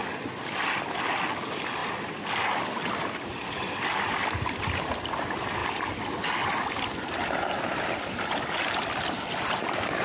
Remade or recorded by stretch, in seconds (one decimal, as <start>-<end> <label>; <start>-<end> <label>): 0.0-1.8 recorded; 1.8-4.6 remade; 4.6-5.6 recorded; 5.6-9.5 remade; 9.5-10.0 recorded